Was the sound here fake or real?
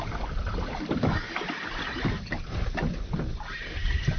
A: real